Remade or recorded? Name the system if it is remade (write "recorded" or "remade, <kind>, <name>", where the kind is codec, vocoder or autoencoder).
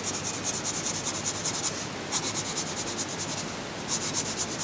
recorded